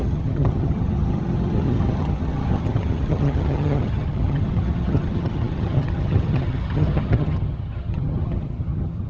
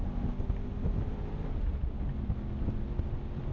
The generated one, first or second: first